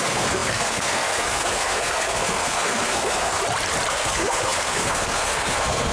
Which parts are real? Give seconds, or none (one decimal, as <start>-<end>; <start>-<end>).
3.4-3.9